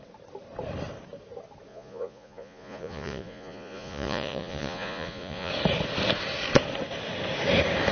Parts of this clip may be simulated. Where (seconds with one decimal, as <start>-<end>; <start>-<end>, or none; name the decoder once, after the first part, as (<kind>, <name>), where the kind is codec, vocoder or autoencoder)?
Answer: 1.7-5.5 (vocoder, Vocos)

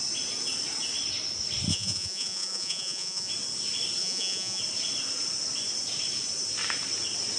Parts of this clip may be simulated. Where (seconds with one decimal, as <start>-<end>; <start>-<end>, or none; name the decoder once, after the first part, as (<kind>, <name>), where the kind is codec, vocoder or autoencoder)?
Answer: 1.7-3.3 (vocoder, Vocos); 4.0-4.6

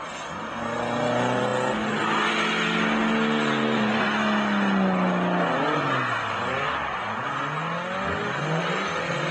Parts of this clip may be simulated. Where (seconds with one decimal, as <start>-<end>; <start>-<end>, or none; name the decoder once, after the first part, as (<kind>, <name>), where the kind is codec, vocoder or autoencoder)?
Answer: none

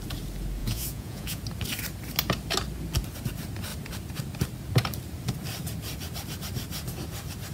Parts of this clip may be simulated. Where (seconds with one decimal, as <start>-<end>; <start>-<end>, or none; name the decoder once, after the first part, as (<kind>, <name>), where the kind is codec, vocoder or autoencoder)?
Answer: 0.6-1.4 (vocoder, Vocos)

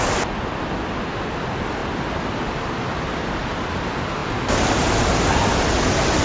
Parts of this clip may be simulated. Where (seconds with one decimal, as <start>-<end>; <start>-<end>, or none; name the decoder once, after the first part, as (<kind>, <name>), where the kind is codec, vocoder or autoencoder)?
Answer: none